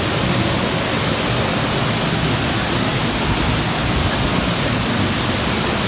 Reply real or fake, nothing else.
real